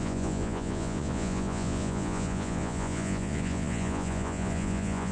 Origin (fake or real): fake